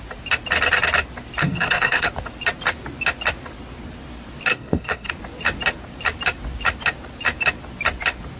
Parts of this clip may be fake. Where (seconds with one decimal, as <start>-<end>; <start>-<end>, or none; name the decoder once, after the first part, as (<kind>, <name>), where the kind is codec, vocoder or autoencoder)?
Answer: 1.4-2.1 (codec, SNAC); 4.5-5.1